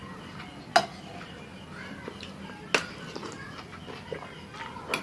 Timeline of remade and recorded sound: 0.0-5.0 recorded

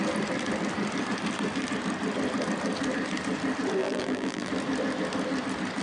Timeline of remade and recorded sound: 0.0-3.8 recorded; 3.8-4.5 remade; 4.5-5.8 recorded

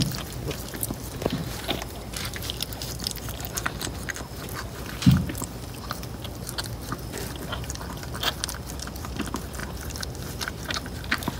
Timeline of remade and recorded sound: 0.0-11.4 recorded

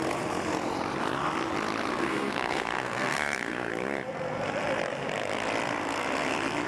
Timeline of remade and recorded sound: 0.0-1.9 recorded; 1.9-3.7 remade; 3.7-6.7 recorded

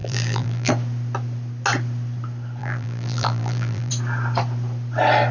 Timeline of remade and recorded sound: 0.0-0.7 remade; 0.7-2.6 recorded; 2.6-3.9 remade; 3.9-5.3 recorded

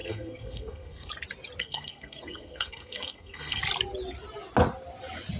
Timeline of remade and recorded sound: 0.0-1.1 remade; 1.1-1.6 recorded; 1.6-3.6 remade; 3.6-5.4 recorded